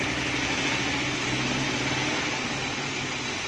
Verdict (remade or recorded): recorded